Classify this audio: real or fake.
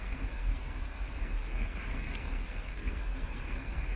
fake